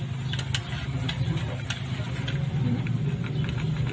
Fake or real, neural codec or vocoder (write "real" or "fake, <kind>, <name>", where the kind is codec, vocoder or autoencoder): real